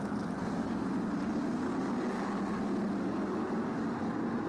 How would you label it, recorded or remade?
recorded